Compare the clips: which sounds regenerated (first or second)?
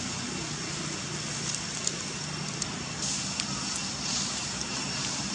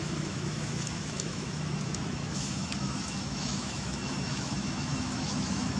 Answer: second